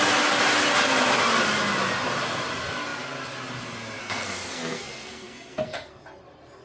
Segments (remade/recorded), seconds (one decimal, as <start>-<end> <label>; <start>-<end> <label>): 0.0-4.0 recorded; 4.0-6.0 remade; 6.0-6.6 recorded